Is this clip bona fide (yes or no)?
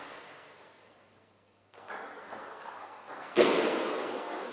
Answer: no